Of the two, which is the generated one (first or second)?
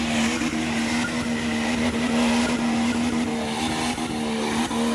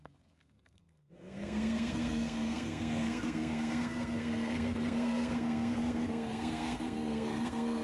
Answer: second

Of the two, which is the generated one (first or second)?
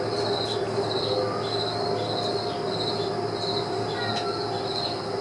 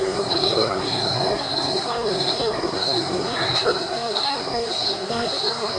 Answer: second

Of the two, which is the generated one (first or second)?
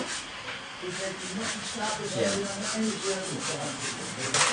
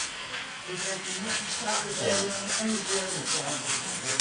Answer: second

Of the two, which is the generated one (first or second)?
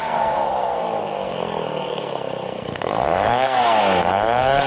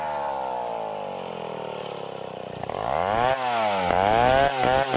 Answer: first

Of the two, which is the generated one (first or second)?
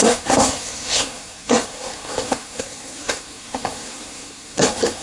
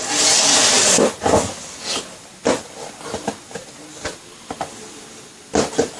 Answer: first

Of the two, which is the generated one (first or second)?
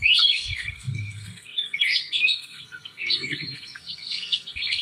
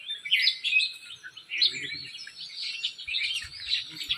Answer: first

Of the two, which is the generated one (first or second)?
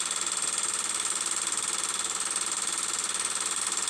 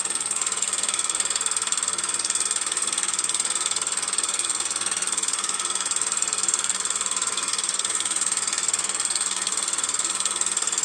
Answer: second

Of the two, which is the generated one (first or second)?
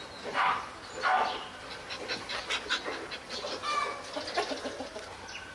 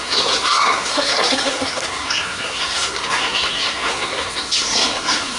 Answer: second